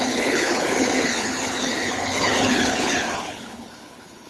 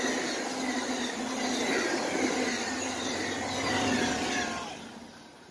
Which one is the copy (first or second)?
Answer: first